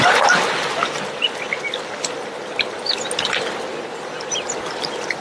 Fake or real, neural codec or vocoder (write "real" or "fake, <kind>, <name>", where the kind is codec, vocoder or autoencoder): real